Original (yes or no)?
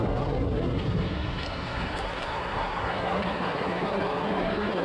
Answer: no